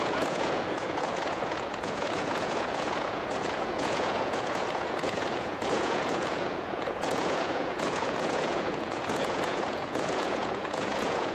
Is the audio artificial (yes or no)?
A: yes